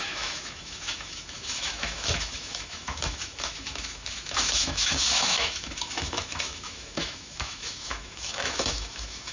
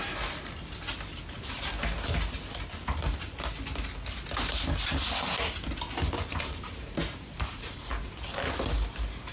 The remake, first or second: first